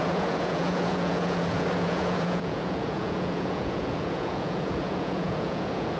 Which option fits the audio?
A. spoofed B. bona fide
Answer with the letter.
A